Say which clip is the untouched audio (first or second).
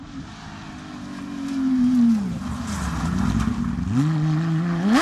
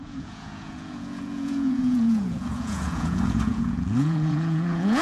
first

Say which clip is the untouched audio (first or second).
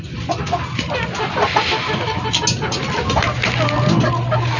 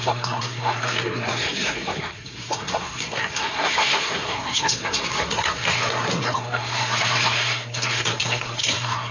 first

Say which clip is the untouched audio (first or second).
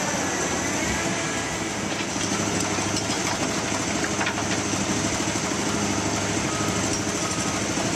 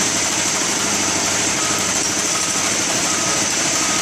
first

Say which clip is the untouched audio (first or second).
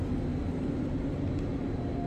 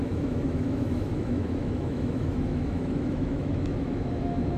first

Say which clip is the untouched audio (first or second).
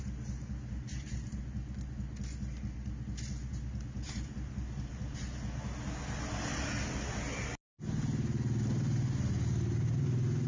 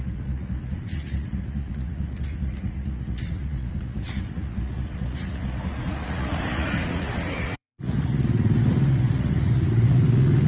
first